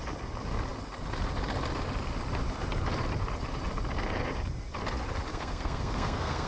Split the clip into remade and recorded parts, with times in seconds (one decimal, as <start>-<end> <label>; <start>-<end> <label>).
0.0-5.3 recorded; 5.3-6.5 remade